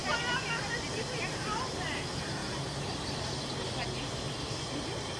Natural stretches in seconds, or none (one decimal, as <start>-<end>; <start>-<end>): 0.0-5.2